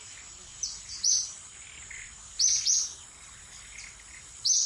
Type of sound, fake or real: fake